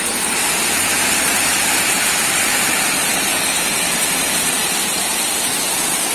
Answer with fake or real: fake